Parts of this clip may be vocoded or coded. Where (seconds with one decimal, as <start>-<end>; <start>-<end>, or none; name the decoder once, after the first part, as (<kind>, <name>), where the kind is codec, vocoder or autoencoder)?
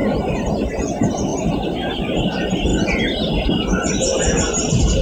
0.0-2.7 (vocoder, BigVGAN v2); 3.5-5.0